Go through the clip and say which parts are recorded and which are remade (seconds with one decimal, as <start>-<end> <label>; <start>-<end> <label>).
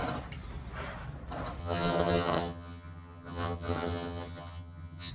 0.0-1.6 recorded; 1.6-5.1 remade